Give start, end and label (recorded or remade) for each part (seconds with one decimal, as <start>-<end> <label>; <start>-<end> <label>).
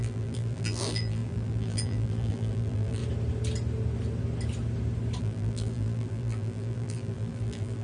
0.0-3.0 remade; 3.0-5.2 recorded; 5.2-7.8 remade